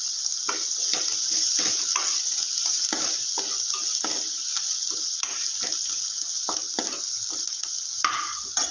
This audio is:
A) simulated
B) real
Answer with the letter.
B